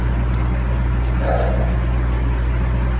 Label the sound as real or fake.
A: real